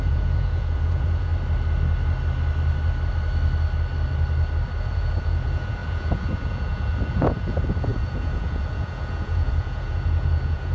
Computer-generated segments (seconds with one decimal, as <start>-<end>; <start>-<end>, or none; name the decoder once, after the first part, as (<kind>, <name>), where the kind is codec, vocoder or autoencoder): 0.0-1.3 (vocoder, Vocos); 4.8-10.7